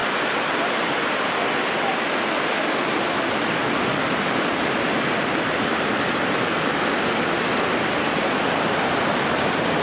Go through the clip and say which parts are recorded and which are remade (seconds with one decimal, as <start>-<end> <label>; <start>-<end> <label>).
0.0-9.8 recorded